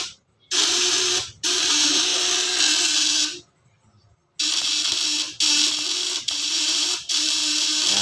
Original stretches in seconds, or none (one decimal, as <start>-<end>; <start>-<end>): 2.1-6.2; 7.4-8.0